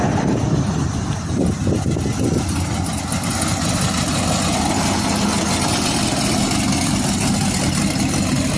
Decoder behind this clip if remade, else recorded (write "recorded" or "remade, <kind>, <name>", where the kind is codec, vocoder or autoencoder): recorded